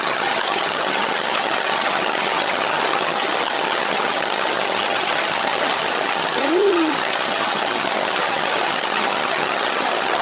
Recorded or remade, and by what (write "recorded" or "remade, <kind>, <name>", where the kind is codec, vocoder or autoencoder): remade, vocoder, HiFi-GAN